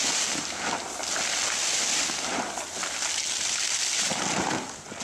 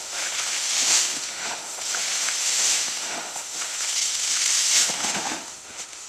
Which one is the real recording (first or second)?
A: first